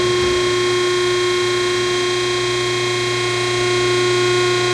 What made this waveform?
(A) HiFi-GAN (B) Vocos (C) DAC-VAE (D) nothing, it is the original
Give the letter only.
D